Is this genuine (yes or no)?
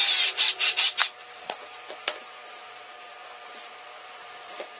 no